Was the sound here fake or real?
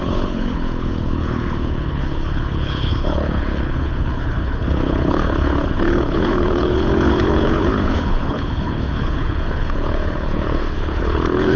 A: fake